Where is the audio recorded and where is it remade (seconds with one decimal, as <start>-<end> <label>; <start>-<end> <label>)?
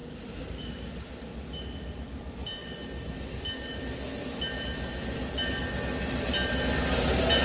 0.0-7.4 recorded